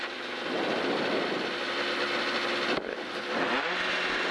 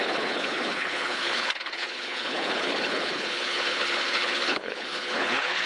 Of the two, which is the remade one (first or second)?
second